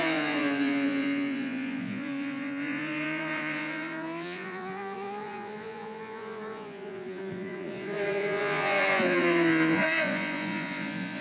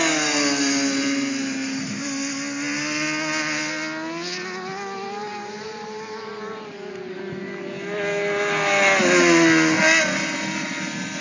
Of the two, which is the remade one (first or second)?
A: first